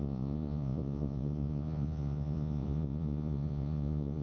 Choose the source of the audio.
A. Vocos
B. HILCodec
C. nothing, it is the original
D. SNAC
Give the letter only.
A